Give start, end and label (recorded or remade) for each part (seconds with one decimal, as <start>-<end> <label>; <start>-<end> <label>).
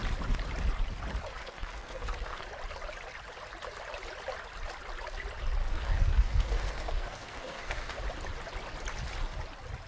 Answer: 0.0-1.4 recorded; 1.4-2.4 remade; 2.4-5.6 recorded; 5.6-8.0 remade; 8.0-9.9 recorded